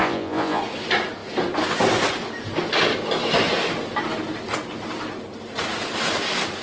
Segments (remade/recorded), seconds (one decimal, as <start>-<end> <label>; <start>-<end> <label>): 0.0-0.6 remade; 0.6-6.6 recorded